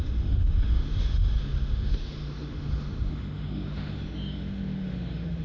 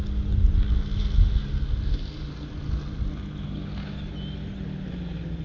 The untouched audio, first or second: second